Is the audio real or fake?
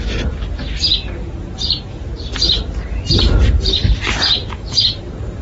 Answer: real